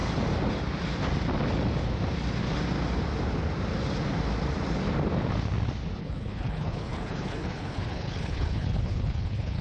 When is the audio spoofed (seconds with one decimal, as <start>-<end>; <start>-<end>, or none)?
6.0-9.6